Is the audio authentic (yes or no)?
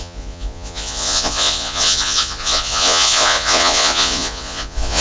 no